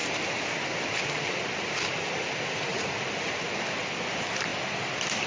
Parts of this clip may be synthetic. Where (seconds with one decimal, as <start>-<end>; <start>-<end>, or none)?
2.7-3.3